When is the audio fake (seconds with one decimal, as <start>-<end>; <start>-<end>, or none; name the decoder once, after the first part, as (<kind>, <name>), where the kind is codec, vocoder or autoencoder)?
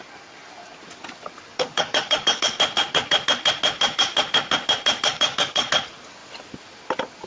1.5-2.4 (codec, DAC); 5.1-5.7